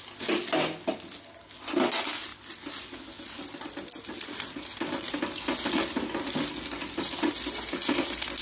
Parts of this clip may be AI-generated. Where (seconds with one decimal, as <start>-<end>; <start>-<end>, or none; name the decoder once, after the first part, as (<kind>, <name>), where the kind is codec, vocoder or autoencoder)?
none